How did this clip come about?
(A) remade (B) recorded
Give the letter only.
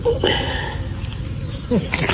B